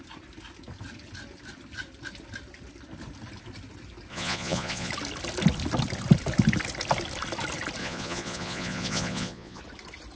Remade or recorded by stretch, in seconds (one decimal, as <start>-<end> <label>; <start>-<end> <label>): 0.0-4.1 recorded; 4.1-4.9 remade; 4.9-7.8 recorded; 7.8-9.6 remade; 9.6-10.2 recorded